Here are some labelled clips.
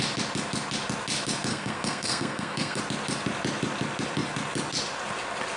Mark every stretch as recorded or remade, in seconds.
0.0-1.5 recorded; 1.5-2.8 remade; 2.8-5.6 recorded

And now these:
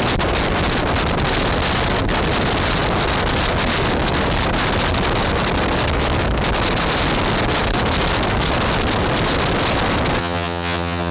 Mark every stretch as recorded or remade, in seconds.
0.0-10.2 recorded; 10.2-11.1 remade

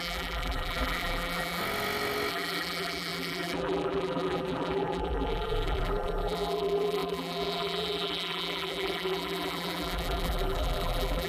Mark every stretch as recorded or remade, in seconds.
0.0-1.6 remade; 1.6-2.3 recorded; 2.3-11.3 remade